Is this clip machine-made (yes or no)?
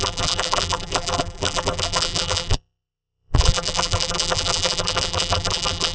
yes